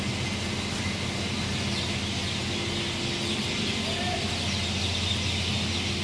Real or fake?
real